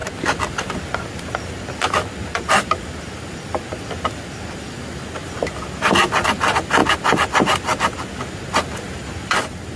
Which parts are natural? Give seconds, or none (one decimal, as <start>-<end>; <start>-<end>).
0.8-9.8